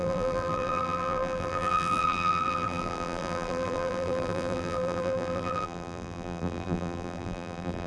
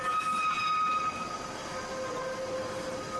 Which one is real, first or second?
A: second